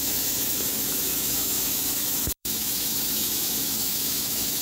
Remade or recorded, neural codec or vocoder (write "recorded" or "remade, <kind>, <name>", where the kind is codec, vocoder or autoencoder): remade, autoencoder, DAC-VAE